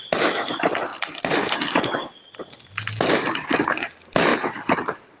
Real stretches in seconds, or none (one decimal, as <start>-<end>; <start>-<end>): 0.0-0.9; 2.2-4.3